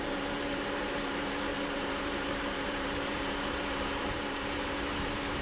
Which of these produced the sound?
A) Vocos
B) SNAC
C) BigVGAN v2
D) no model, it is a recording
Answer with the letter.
C